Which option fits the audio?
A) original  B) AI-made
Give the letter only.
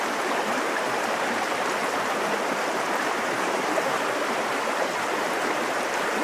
B